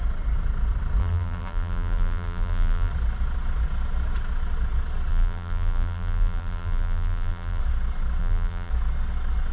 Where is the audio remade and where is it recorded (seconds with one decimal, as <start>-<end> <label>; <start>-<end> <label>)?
0.0-1.0 recorded; 1.0-2.9 remade; 2.9-5.1 recorded; 5.1-7.6 remade; 7.6-8.2 recorded; 8.2-8.7 remade; 8.7-9.5 recorded